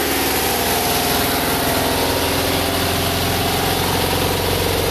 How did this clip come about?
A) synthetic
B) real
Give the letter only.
B